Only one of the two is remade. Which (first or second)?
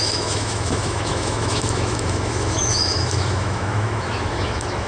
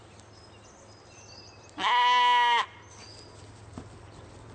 first